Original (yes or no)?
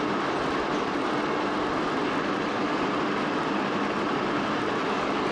yes